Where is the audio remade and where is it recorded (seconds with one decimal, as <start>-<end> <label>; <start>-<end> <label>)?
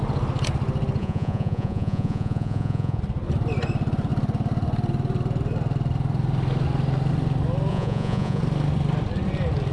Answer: 0.0-1.0 recorded; 1.0-3.0 remade; 3.0-7.7 recorded; 7.7-8.4 remade; 8.4-9.7 recorded